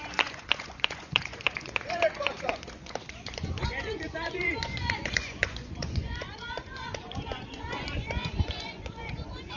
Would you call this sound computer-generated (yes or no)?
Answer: yes